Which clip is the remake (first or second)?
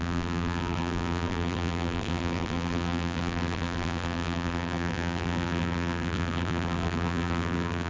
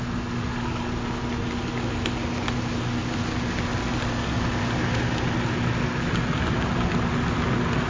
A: first